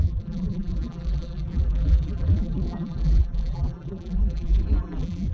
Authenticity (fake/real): fake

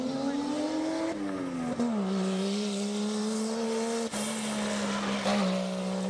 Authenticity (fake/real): real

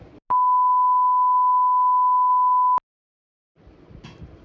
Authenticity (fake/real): real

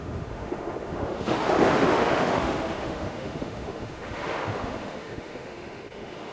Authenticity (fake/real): fake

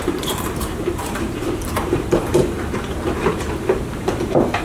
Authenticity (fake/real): fake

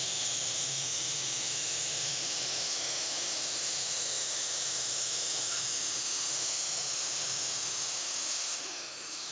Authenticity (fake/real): fake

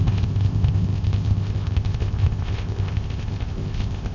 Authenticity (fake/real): fake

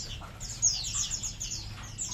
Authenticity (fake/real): real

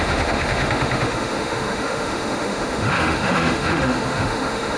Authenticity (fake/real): fake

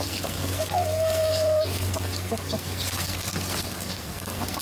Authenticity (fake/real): fake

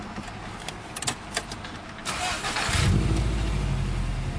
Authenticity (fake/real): real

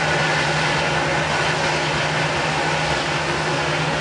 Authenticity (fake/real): real